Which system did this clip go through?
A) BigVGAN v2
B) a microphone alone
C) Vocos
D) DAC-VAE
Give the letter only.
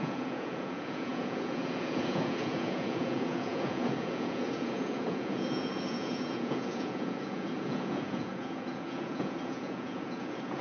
C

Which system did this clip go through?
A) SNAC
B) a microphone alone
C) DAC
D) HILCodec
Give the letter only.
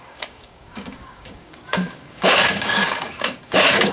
C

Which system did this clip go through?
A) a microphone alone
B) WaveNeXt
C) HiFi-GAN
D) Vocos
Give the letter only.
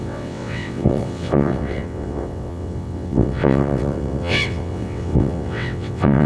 B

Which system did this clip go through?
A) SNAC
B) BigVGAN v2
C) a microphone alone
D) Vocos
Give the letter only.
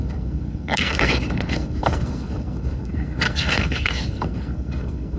A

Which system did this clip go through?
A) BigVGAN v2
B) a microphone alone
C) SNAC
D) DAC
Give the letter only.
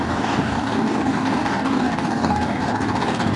D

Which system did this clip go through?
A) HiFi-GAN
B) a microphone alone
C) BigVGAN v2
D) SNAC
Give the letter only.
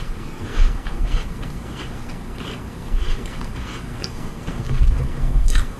D